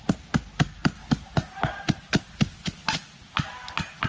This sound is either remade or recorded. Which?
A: recorded